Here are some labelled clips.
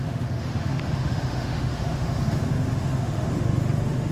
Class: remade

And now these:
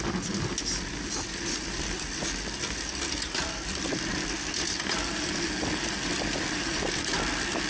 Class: recorded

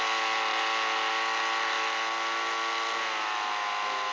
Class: recorded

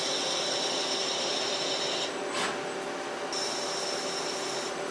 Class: recorded